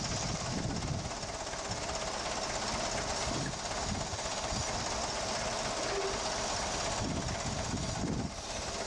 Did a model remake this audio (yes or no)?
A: no